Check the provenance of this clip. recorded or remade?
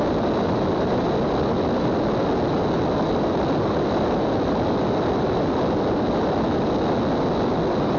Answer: recorded